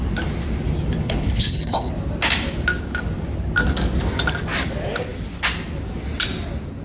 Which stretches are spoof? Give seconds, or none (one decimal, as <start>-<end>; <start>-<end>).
1.0-1.9